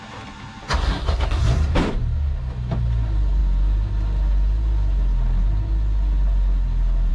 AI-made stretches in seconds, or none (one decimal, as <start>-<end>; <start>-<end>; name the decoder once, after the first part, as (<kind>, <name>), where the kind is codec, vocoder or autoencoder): 0.8-1.4 (codec, SNAC)